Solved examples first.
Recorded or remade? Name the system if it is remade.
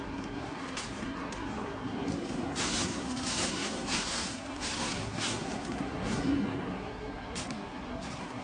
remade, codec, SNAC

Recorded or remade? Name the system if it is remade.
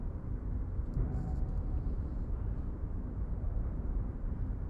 remade, vocoder, BigVGAN v2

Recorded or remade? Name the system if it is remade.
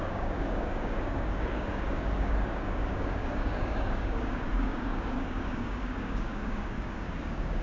remade, codec, DAC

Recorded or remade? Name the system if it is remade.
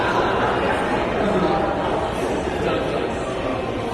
recorded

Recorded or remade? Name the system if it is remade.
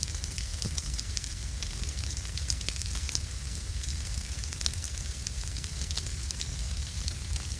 remade, codec, SNAC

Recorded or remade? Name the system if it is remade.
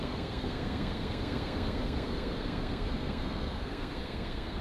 remade, codec, SNAC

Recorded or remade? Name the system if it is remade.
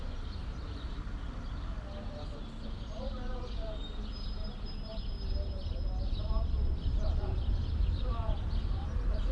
recorded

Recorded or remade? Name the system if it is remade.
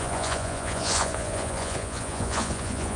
remade, vocoder, Vocos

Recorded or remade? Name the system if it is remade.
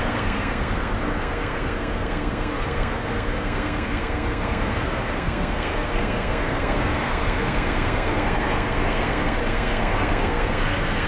remade, codec, SNAC